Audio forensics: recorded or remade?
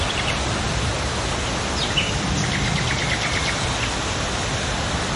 recorded